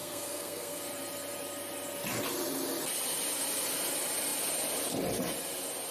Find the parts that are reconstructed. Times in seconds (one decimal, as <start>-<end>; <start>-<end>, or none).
0.0-0.8